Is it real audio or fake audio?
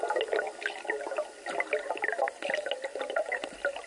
real